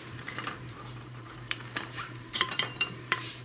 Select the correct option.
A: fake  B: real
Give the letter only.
A